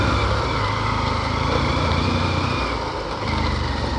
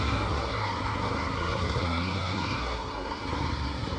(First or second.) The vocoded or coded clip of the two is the second